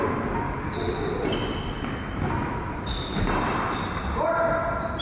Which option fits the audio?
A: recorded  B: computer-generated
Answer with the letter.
A